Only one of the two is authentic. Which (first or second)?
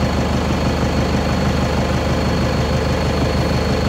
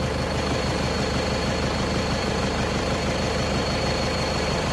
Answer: first